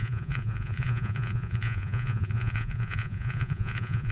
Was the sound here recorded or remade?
remade